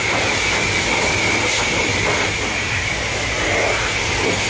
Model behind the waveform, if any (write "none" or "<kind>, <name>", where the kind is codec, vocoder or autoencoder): none